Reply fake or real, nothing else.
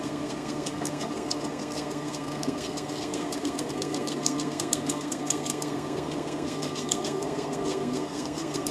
fake